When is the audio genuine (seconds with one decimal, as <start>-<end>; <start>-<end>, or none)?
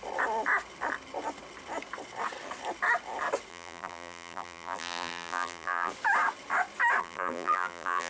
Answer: 0.0-3.5; 5.9-7.0